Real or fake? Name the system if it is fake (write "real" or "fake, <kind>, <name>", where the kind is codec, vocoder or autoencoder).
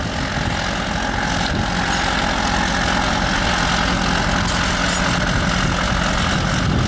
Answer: real